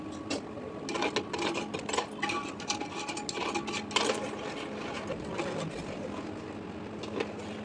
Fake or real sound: real